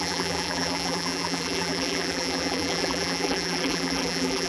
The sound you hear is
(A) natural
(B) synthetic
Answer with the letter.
B